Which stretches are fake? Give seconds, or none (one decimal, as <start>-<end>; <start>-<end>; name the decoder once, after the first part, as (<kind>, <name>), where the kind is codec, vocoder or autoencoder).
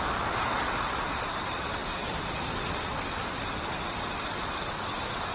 1.8-2.5 (vocoder, BigVGAN v2)